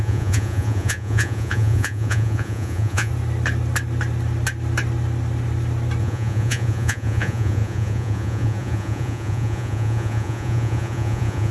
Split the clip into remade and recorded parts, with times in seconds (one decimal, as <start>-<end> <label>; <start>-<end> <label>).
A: 0.0-3.1 remade; 3.1-6.0 recorded; 6.0-11.5 remade